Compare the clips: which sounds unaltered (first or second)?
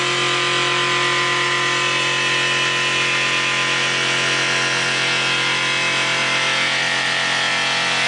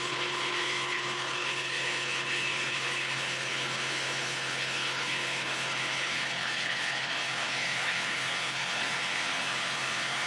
first